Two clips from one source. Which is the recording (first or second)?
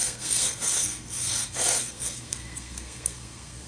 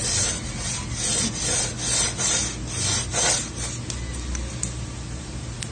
second